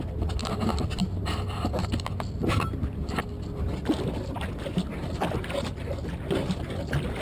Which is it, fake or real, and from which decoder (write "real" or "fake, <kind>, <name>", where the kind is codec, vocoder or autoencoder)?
real